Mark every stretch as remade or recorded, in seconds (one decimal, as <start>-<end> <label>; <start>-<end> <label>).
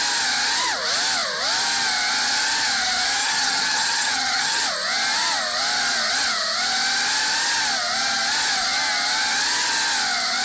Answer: 0.0-3.2 recorded; 3.2-4.6 remade; 4.6-10.4 recorded